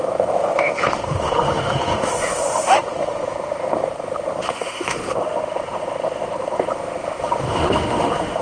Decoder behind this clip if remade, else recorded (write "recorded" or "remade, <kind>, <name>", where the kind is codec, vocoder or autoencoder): remade, autoencoder, DAC-VAE